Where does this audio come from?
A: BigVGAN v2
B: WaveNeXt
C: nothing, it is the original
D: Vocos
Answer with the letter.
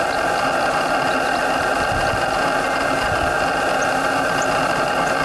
C